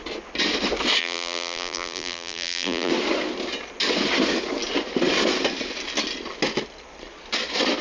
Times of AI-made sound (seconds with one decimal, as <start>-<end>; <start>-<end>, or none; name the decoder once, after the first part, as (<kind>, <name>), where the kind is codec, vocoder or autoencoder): 1.0-2.9 (vocoder, BigVGAN v2)